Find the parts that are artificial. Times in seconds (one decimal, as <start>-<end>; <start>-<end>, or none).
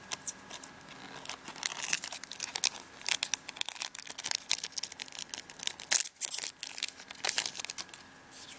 none